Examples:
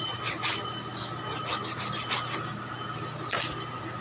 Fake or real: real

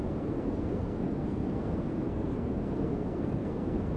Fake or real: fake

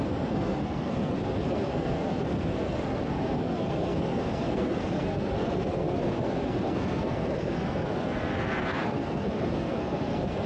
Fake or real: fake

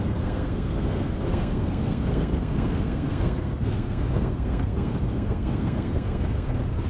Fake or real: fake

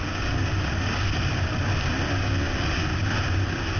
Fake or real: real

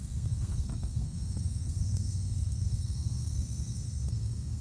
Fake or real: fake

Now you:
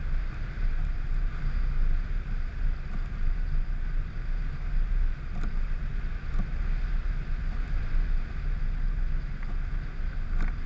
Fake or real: real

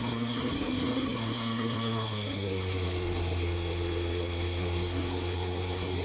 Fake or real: fake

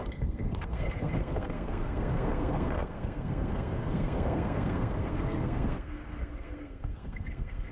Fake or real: fake